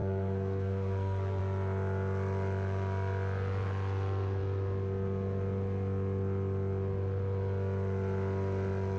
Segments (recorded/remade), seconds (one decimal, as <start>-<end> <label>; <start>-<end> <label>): 0.0-1.4 remade; 1.4-9.0 recorded